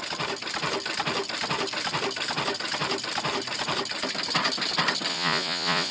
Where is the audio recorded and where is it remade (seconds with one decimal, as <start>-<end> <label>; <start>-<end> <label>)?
0.0-5.1 recorded; 5.1-5.9 remade